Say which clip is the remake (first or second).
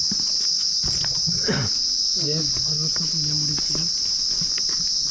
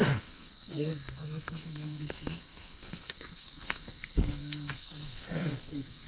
second